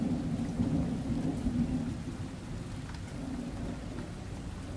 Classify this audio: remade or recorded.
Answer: recorded